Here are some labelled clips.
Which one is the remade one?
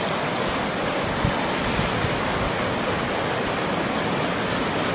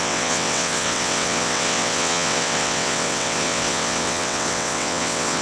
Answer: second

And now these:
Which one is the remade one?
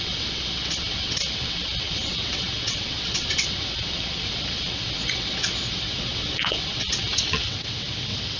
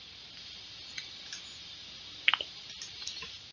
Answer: first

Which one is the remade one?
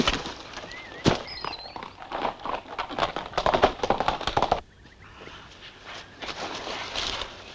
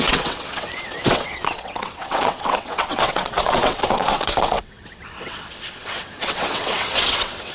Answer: second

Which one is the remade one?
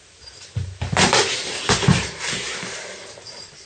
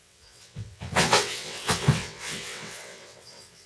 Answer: second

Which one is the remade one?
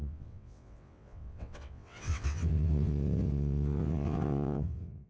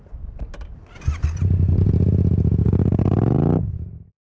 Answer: first